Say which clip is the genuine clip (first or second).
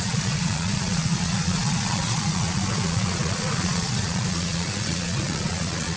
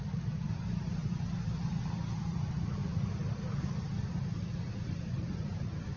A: second